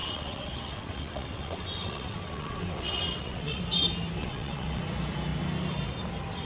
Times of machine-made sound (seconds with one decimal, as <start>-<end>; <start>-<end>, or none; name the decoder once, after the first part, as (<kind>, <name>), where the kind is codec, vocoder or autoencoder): 0.0-3.6 (vocoder, WaveNeXt); 4.2-4.8